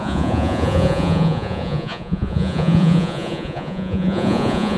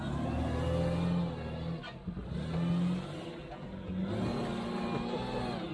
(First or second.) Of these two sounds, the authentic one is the second